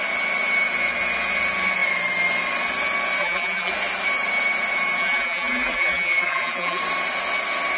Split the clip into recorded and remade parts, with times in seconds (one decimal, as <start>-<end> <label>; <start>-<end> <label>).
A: 0.0-3.2 recorded; 3.2-3.7 remade; 3.7-5.0 recorded; 5.0-6.8 remade; 6.8-7.8 recorded